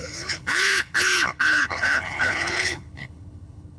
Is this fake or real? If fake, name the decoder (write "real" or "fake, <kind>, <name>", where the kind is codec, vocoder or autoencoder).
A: fake, codec, HILCodec